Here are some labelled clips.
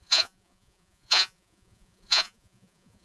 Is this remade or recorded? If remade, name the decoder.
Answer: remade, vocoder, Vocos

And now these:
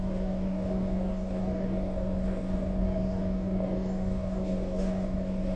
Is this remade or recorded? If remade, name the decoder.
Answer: remade, codec, DAC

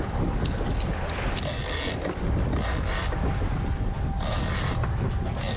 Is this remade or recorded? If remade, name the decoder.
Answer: recorded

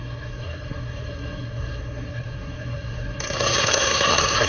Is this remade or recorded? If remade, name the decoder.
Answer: remade, codec, SNAC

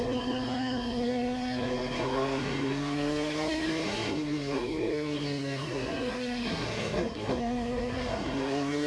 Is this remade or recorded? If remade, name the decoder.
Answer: remade, codec, SNAC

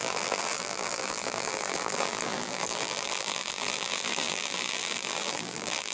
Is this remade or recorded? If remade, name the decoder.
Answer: remade, vocoder, BigVGAN v2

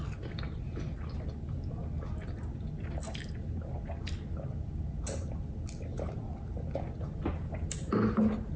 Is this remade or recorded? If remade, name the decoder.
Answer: recorded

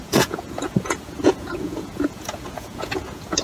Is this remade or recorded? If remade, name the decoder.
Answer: remade, vocoder, Vocos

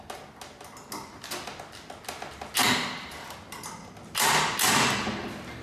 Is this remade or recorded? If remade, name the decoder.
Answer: recorded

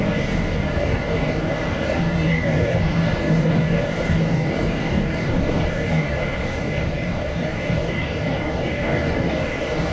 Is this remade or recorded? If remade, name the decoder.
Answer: remade, codec, DAC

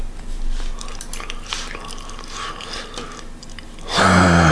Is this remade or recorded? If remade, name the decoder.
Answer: recorded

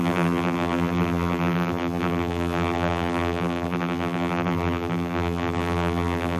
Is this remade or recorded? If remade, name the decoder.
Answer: remade, vocoder, BigVGAN v2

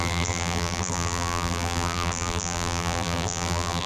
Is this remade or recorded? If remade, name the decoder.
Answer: remade, vocoder, BigVGAN v2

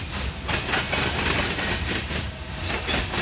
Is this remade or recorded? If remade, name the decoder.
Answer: recorded